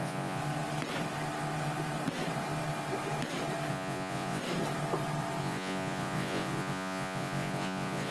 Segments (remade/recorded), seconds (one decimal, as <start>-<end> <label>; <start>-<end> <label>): 0.0-0.4 remade; 0.4-3.7 recorded; 3.7-4.4 remade; 4.4-5.4 recorded; 5.4-8.1 remade